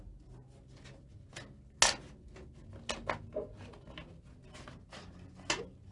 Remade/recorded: recorded